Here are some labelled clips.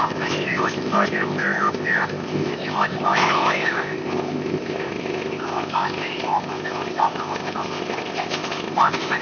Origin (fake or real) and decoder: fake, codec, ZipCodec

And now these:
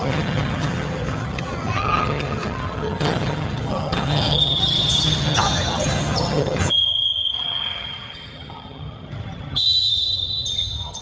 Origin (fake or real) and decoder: fake, vocoder, HiFi-GAN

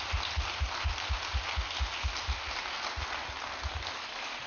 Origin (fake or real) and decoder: real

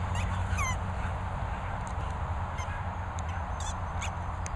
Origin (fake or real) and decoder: real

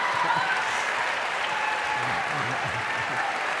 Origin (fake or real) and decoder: real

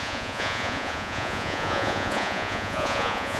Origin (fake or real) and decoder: fake, vocoder, Vocos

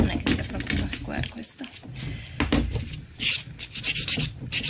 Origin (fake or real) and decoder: real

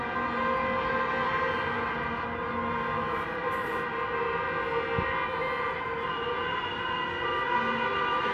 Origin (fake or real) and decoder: real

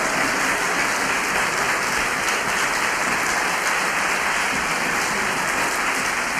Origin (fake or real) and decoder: real